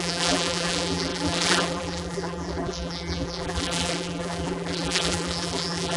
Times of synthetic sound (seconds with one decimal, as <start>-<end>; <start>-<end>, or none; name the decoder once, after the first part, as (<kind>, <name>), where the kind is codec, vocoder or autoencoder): 0.0-6.0 (vocoder, BigVGAN v2)